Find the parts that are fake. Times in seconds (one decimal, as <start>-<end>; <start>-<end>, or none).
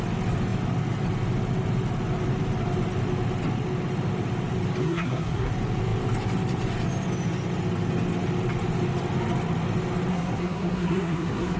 4.8-5.5; 10.1-11.6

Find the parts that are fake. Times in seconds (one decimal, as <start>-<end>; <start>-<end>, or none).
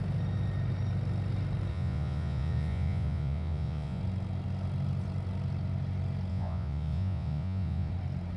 1.7-4.0; 6.3-7.9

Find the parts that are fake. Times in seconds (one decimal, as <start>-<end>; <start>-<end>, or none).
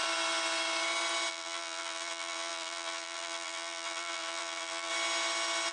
1.3-4.9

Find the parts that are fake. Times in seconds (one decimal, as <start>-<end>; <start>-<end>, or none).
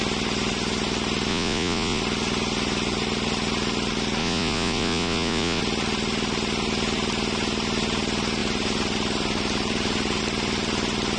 1.3-2.0; 4.2-5.6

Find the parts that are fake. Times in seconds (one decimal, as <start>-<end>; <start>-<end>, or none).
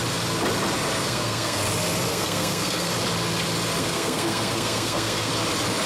1.0-1.6; 2.1-2.9; 3.8-5.3